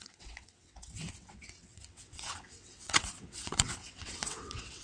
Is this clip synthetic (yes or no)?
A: yes